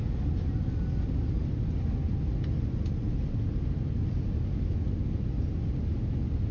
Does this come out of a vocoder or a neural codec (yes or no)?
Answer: no